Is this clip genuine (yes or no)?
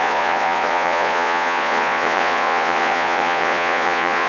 no